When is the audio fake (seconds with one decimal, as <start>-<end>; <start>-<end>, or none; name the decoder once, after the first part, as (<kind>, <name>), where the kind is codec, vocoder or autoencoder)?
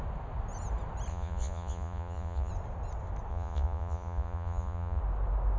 1.1-2.5 (vocoder, Vocos); 3.3-5.0